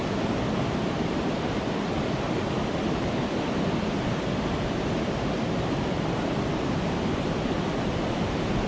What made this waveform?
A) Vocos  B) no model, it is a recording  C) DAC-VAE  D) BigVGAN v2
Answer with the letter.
B